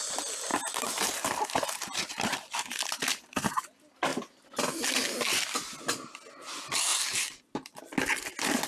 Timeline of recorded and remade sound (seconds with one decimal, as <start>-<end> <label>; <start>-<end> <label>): 0.0-0.5 recorded; 0.5-3.6 remade; 3.6-6.9 recorded; 6.9-7.8 remade; 7.8-8.7 recorded